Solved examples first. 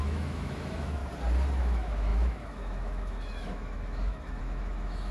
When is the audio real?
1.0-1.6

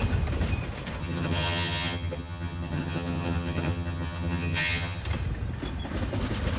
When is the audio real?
0.0-1.0; 5.0-6.6

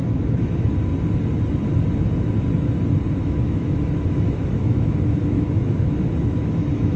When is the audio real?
0.5-3.2

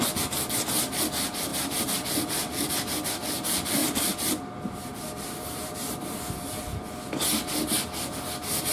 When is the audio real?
0.0-1.5; 2.7-3.8; 6.9-8.7